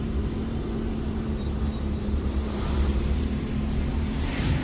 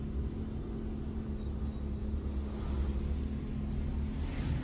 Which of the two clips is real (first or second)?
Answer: second